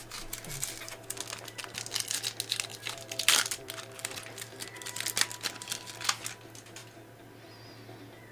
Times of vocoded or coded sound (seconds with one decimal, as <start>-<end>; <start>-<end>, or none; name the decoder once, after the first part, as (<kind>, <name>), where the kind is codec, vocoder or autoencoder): 2.7-4.2 (vocoder, BigVGAN v2)